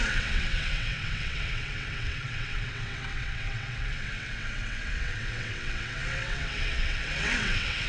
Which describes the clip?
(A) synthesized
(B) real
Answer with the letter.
A